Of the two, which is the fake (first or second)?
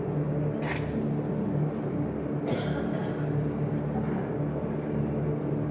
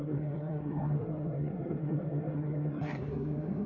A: second